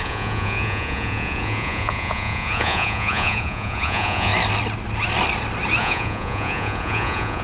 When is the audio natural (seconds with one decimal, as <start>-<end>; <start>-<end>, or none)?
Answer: 4.3-5.8